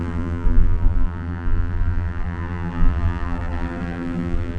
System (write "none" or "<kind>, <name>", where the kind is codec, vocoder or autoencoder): vocoder, BigVGAN v2